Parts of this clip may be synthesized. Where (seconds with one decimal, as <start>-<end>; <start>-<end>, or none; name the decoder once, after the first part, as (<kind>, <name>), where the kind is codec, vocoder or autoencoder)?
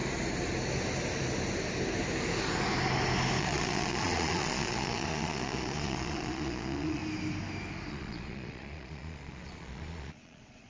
3.4-7.0 (vocoder, Vocos); 7.9-10.7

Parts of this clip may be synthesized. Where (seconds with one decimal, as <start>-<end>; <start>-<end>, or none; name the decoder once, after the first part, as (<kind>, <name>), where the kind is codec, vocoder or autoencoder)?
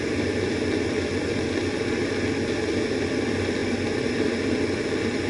none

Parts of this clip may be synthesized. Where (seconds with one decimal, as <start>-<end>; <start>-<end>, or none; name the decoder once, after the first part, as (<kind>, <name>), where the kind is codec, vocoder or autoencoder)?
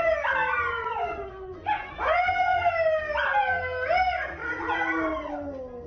0.9-2.7 (vocoder, Vocos); 4.4-5.3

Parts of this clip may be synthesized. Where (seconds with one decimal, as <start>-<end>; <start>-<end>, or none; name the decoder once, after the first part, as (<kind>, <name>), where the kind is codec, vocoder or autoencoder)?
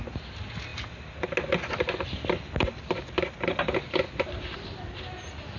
none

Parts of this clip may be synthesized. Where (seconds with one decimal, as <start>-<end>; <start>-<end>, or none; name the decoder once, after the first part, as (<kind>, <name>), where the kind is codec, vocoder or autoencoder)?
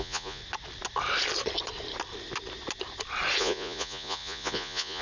0.0-0.4 (vocoder, Vocos); 3.4-5.0